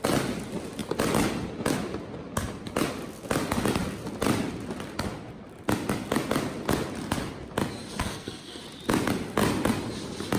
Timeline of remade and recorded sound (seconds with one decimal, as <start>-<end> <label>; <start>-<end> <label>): 0.0-8.0 recorded; 8.0-8.6 remade; 8.6-10.4 recorded